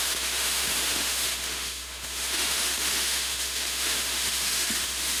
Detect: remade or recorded remade